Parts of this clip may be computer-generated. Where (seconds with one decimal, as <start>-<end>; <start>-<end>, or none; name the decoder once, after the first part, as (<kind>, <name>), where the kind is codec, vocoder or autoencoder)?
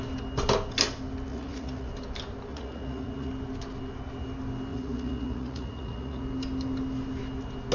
1.3-1.9 (vocoder, Vocos); 2.5-3.3; 4.7-6.2